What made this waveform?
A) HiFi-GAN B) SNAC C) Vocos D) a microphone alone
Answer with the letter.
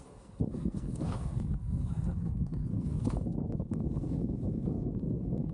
B